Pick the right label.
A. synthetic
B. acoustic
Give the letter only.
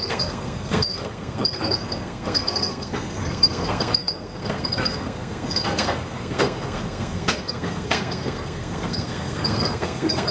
A